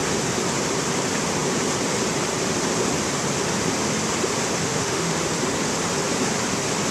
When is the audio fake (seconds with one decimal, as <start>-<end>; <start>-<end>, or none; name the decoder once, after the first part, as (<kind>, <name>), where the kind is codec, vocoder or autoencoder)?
4.6-5.2 (autoencoder, DAC-VAE)